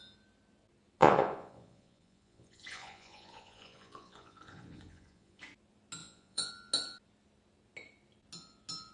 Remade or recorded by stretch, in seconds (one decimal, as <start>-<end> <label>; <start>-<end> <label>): 0.0-1.0 recorded; 1.0-5.4 remade; 5.4-6.0 recorded; 6.0-6.5 remade; 6.5-8.9 recorded